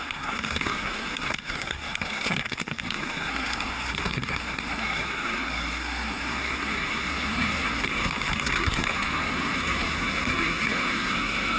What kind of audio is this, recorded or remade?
remade